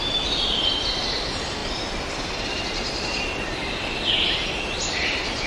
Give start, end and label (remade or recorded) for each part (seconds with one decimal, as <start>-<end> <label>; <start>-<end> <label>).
0.0-5.5 recorded

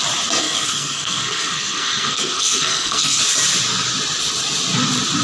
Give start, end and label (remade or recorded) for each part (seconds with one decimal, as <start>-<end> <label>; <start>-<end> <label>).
0.0-0.4 recorded; 0.4-3.2 remade; 3.2-5.2 recorded

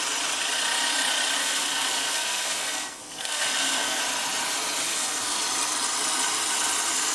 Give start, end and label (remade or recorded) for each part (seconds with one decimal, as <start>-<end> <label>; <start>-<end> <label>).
0.0-1.4 recorded; 1.4-4.0 remade; 4.0-4.9 recorded; 4.9-5.4 remade; 5.4-7.1 recorded

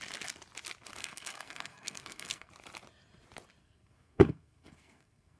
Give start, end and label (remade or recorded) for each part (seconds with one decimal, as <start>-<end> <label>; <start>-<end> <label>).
0.0-1.0 recorded; 1.0-2.5 remade; 2.5-3.6 recorded; 3.6-5.4 remade

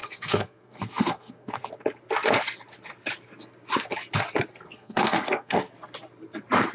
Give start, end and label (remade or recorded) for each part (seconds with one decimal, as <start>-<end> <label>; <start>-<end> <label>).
0.0-1.7 remade; 1.7-4.5 recorded; 4.5-5.7 remade; 5.7-6.7 recorded